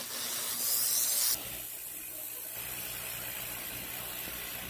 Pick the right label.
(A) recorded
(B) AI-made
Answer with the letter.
A